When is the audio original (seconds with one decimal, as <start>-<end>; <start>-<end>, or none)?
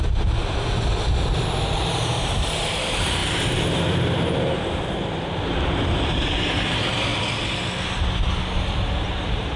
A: 7.1-9.0